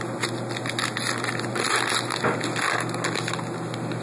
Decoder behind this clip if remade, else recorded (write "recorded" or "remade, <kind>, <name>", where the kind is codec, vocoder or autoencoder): recorded